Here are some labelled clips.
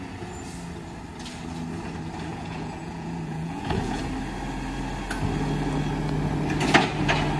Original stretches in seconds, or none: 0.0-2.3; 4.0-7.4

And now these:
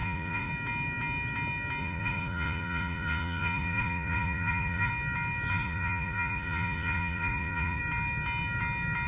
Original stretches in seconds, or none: 0.5-1.8; 4.9-5.5; 7.8-9.1

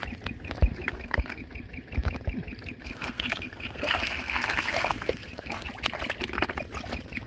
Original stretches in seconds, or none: 0.0-0.9; 1.4-2.8; 5.7-7.3

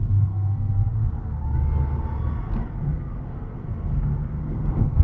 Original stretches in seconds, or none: 1.4-2.7

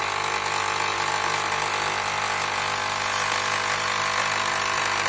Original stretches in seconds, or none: 0.0-5.1

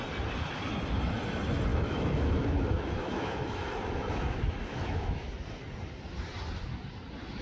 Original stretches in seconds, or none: 0.0-1.7; 5.3-7.4

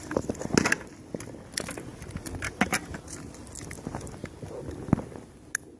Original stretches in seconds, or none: 0.0-5.8

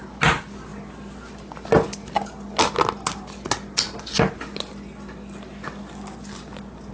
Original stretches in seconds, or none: 0.0-6.9